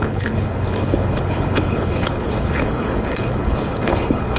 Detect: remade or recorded remade